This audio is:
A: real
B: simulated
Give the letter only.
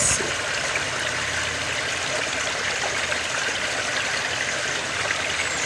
A